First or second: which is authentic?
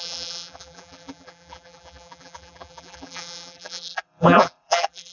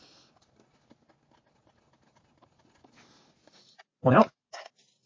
second